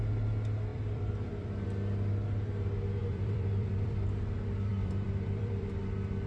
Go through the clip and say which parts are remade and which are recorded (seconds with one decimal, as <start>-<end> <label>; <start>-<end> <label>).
0.0-0.7 recorded; 0.7-1.7 remade; 1.7-3.0 recorded; 3.0-4.2 remade; 4.2-4.7 recorded; 4.7-5.8 remade; 5.8-6.3 recorded